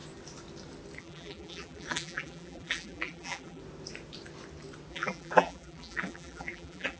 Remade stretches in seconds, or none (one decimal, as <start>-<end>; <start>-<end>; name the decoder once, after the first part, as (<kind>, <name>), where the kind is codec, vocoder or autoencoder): 1.0-3.6 (vocoder, BigVGAN v2); 4.9-7.0